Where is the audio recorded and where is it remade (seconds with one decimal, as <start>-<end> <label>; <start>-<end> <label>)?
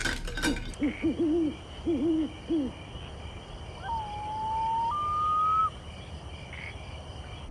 0.0-5.6 recorded; 5.6-6.2 remade; 6.2-7.5 recorded